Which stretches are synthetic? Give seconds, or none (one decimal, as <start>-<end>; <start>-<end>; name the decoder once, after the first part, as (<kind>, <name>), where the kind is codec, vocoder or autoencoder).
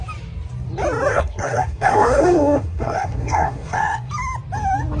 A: 1.1-4.1 (codec, SNAC)